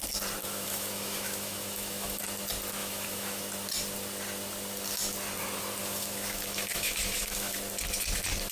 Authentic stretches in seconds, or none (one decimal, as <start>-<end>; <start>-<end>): 0.0-0.4; 2.2-2.8; 3.4-5.8; 7.6-8.5